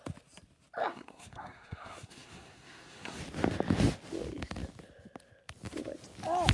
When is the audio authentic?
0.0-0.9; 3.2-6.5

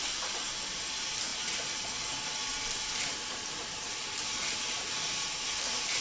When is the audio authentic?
0.0-6.0

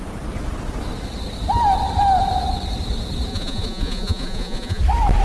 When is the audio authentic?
0.0-3.3; 4.8-5.2